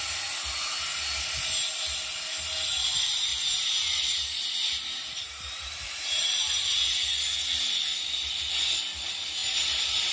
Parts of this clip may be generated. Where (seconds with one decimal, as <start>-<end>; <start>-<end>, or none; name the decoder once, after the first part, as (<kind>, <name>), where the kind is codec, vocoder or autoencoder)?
3.3-7.1 (vocoder, BigVGAN v2); 9.4-10.1

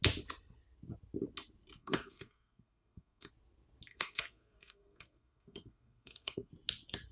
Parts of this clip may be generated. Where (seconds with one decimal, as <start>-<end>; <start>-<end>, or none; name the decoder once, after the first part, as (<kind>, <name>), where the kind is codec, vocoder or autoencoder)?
1.8-3.3 (codec, SNAC); 3.9-6.5